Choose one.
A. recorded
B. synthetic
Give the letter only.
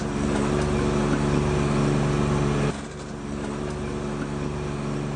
A